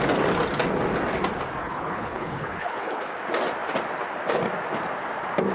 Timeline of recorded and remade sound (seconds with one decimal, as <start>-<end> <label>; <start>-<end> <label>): 0.0-1.6 recorded; 1.6-3.1 remade; 3.1-5.5 recorded

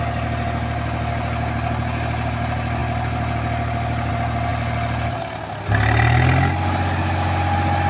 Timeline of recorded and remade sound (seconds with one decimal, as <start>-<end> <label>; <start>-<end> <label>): 0.0-7.9 recorded

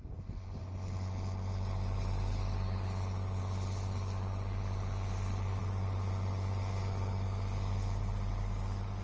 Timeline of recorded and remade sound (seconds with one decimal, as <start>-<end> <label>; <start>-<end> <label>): 0.0-9.0 recorded

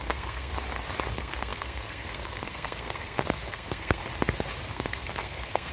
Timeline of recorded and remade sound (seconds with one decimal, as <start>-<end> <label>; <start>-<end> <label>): 0.0-0.5 remade; 0.5-1.1 recorded; 1.1-4.0 remade; 4.0-4.7 recorded; 4.7-5.7 remade

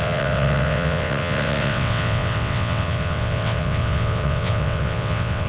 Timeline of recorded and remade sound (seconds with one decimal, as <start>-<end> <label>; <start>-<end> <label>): 0.0-5.5 remade

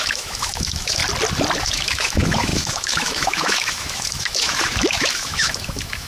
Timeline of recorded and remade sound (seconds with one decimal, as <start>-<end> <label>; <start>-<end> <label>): 0.0-1.0 remade; 1.0-1.6 recorded; 1.6-6.1 remade

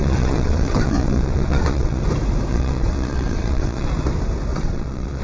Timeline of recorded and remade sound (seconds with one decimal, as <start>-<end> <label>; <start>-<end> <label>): 0.0-2.0 remade; 2.0-2.5 recorded; 2.5-3.9 remade; 3.9-4.5 recorded; 4.5-5.2 remade